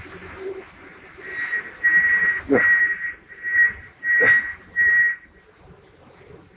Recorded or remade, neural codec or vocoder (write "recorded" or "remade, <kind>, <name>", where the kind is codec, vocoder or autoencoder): remade, vocoder, BigVGAN v2